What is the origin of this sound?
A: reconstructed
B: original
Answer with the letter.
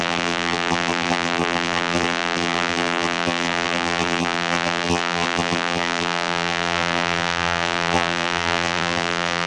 A